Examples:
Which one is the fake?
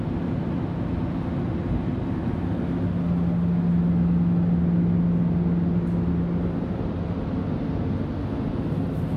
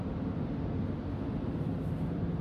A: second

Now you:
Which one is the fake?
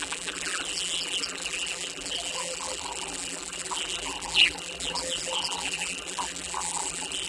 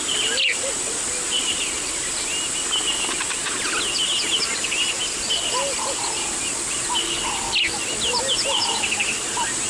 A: first